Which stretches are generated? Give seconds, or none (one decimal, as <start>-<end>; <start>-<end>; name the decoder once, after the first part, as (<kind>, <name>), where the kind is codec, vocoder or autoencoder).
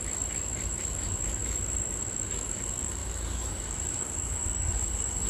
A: 0.0-5.3 (codec, DAC)